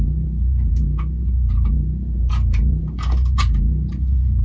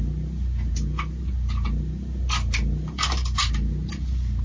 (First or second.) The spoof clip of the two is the first